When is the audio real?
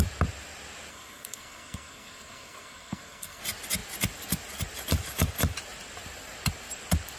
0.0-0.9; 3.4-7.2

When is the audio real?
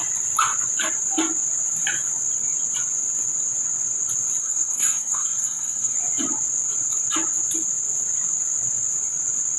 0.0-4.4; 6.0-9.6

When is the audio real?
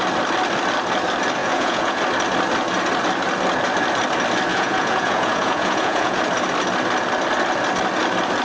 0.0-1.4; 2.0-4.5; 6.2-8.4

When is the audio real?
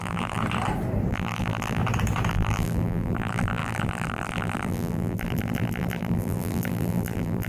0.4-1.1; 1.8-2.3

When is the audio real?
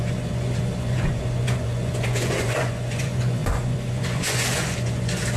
none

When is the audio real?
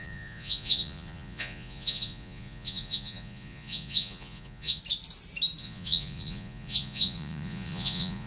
4.8-5.6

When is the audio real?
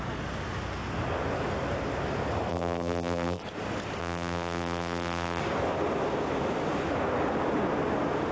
0.0-2.5; 3.4-4.0; 5.4-8.3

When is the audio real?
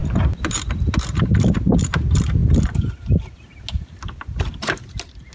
1.3-5.3